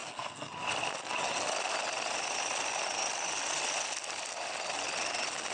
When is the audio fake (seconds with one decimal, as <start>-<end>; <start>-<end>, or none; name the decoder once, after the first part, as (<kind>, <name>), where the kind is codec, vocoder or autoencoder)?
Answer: 0.0-0.5 (codec, SNAC)